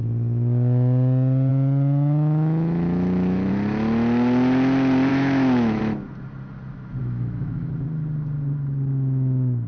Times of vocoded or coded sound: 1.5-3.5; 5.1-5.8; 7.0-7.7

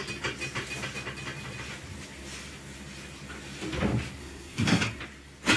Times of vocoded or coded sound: 4.2-5.0